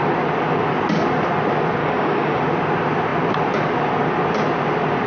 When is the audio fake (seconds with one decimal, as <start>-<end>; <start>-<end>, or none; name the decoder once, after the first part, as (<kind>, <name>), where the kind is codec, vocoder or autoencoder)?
1.8-2.4 (codec, DAC)